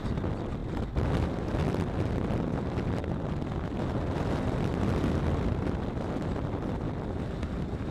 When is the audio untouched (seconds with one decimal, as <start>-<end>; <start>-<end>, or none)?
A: 0.0-7.9